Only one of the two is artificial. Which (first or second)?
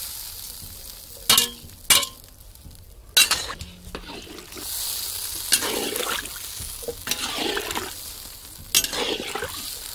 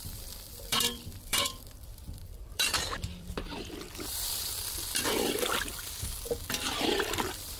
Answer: second